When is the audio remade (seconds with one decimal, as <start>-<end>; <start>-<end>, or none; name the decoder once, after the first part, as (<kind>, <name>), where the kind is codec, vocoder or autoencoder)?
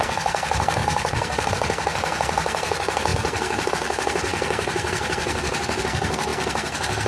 0.0-7.1 (codec, SNAC)